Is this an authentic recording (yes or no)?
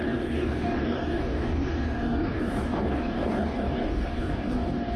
no